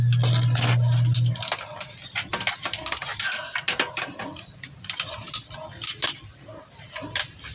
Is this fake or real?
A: real